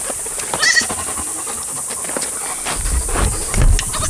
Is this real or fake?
real